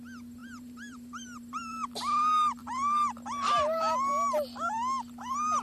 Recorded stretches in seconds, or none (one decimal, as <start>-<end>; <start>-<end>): 0.0-0.4; 3.8-5.6